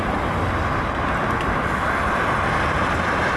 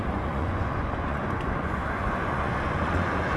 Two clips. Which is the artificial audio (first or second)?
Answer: second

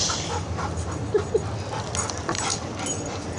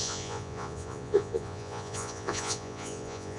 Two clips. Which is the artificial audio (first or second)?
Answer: second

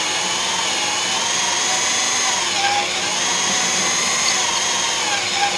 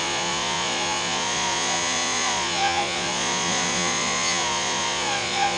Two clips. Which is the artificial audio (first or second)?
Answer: second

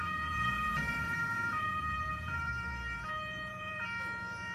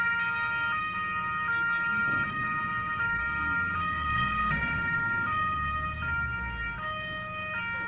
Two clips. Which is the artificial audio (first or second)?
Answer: first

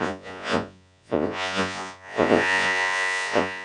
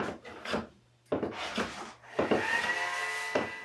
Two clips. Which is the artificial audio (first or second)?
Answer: first